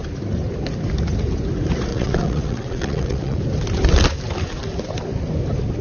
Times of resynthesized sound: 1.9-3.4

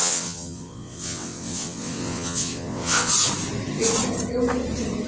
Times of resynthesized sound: 0.0-3.1